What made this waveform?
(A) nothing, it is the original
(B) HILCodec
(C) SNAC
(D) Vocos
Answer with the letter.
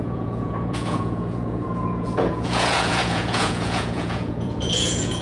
D